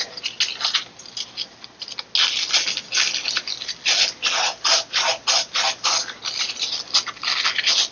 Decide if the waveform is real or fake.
real